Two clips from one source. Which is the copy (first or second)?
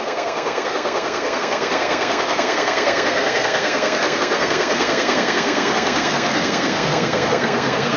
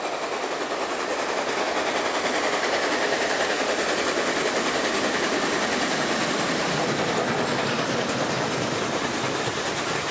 first